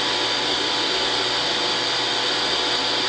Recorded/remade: recorded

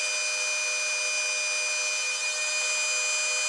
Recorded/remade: recorded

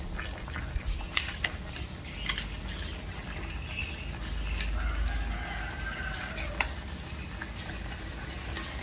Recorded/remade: recorded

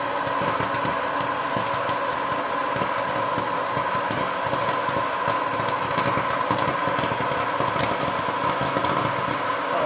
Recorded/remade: recorded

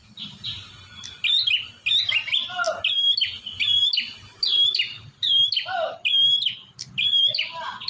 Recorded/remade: recorded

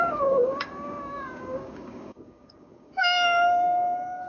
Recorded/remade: remade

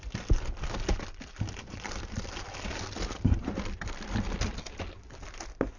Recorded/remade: recorded